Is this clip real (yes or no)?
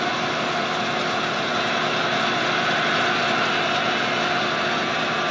yes